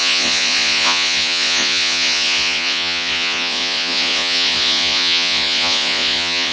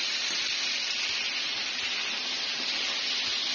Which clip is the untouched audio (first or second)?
second